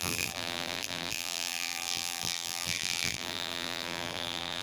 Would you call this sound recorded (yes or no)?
no